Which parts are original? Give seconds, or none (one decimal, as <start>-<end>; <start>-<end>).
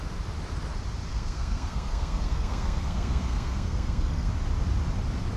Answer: 0.0-1.1; 4.3-5.4